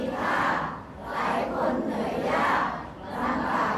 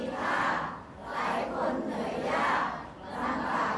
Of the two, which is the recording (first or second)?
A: second